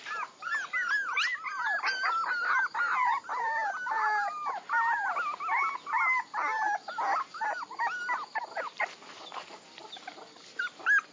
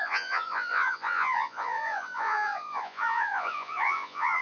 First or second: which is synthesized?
second